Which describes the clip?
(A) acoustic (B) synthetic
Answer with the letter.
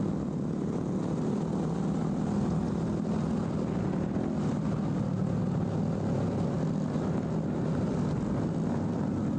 A